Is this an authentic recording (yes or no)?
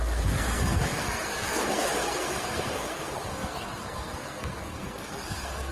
no